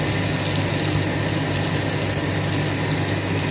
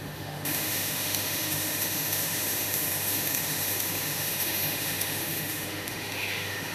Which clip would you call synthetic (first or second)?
second